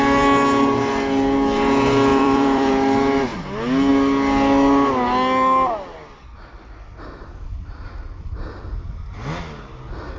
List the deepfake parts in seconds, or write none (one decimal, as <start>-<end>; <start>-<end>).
2.1-2.7